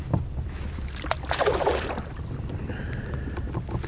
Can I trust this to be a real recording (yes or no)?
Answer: yes